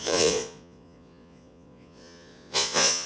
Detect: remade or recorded remade